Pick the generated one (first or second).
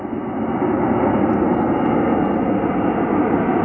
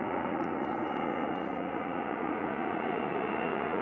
second